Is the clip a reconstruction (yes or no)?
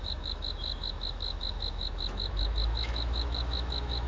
yes